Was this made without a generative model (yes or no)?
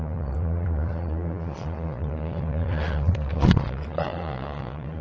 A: no